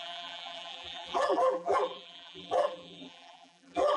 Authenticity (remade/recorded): remade